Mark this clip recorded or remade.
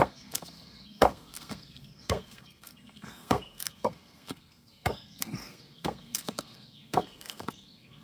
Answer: remade